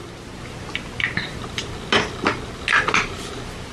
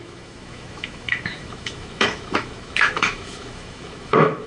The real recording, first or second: first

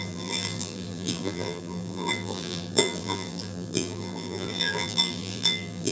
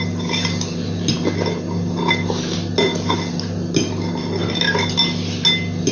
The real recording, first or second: second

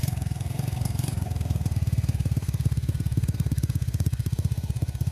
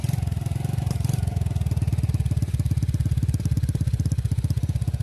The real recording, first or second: second